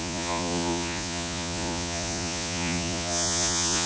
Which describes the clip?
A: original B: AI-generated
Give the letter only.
B